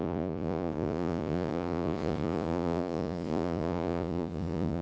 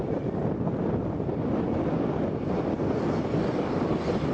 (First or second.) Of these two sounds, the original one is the second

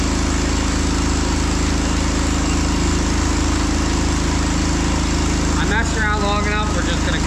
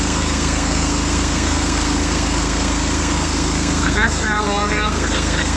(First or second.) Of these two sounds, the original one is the first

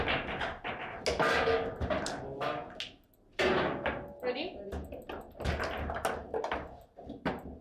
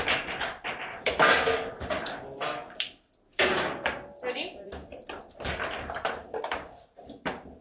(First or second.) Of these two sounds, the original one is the first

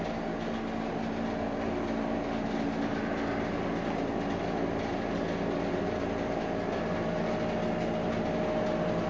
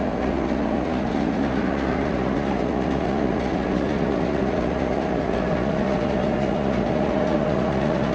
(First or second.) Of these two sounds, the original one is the first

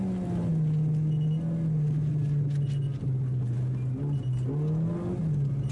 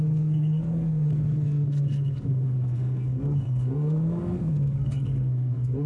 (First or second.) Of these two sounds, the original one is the first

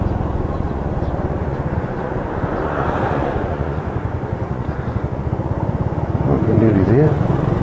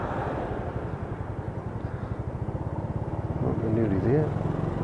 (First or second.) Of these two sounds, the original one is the second